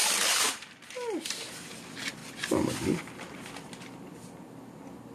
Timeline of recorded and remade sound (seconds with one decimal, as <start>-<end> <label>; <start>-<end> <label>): 0.0-0.8 remade; 0.8-5.1 recorded